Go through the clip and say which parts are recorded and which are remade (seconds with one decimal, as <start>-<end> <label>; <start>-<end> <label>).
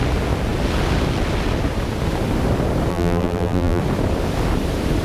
0.0-2.9 recorded; 2.9-3.8 remade; 3.8-5.0 recorded